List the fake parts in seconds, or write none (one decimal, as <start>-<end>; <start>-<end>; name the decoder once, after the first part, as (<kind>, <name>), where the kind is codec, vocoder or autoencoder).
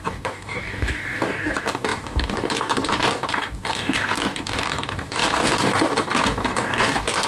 0.0-7.3 (codec, DAC)